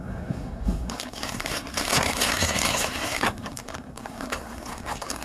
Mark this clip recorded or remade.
remade